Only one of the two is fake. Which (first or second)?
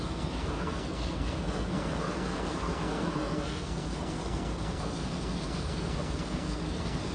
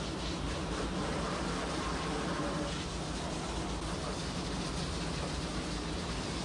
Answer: first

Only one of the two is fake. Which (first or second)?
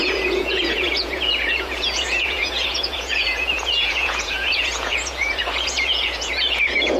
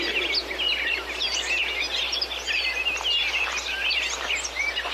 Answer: first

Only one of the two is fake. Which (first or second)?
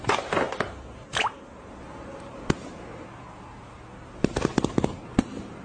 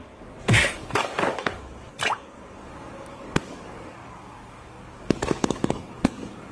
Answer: second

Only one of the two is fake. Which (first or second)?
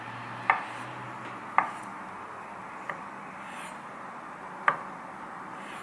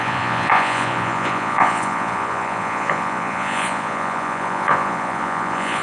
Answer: second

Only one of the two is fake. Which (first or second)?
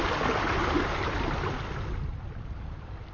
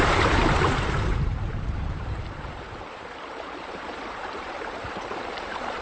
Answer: second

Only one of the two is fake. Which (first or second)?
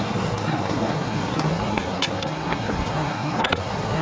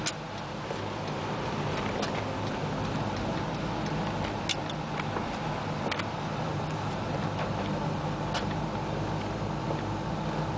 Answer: first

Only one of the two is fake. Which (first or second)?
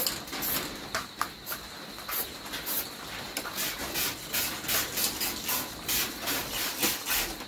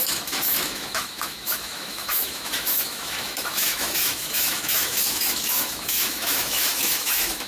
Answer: second